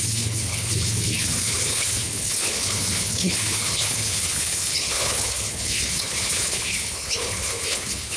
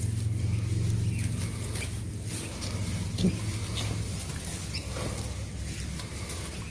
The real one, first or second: second